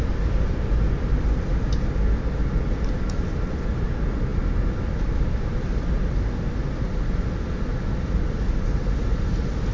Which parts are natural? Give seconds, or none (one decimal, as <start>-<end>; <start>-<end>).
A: 0.0-9.7